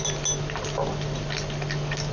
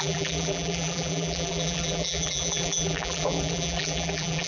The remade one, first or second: second